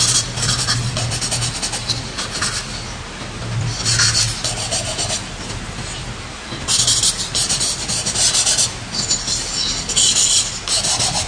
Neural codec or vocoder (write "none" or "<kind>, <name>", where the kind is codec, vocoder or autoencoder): none